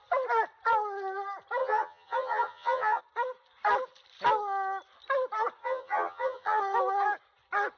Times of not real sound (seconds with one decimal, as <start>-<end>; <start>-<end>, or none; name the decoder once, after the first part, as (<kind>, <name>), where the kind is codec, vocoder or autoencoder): 1.6-3.0 (vocoder, HiFi-GAN); 5.6-6.6